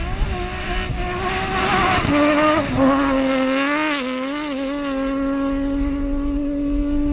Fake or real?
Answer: real